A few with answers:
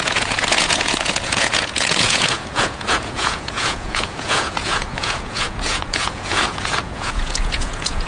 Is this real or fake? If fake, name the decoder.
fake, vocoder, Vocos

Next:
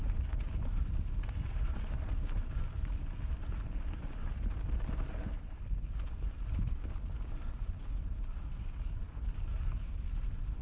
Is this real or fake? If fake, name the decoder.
real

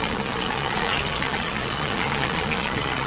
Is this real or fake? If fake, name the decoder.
fake, vocoder, Vocos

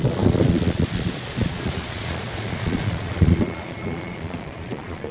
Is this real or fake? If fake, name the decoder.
fake, vocoder, Vocos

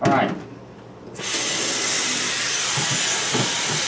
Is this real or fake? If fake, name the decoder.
real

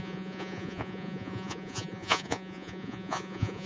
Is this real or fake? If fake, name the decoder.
fake, vocoder, Vocos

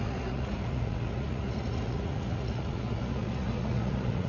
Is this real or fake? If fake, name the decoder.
fake, vocoder, Vocos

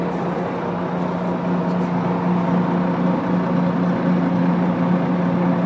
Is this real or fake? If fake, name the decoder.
real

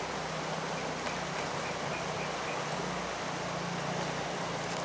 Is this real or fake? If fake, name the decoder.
real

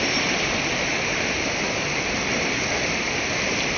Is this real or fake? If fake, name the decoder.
real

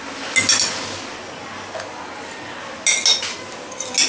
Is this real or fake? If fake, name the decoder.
real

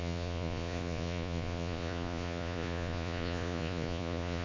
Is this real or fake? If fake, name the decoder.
fake, vocoder, Vocos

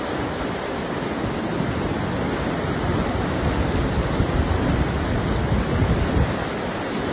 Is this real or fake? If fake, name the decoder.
real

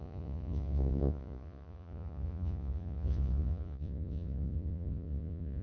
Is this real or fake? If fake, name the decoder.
fake, vocoder, Vocos